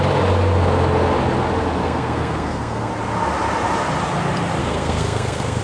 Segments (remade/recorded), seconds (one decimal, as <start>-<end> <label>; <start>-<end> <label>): 0.0-1.8 recorded; 1.8-2.9 remade; 2.9-4.6 recorded; 4.6-5.6 remade